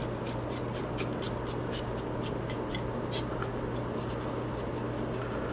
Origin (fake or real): real